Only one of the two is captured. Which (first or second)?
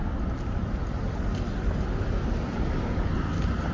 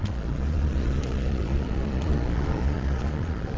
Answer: first